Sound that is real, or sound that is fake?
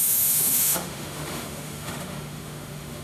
fake